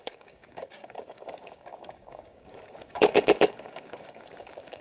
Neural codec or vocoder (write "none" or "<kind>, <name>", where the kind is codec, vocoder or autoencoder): codec, DAC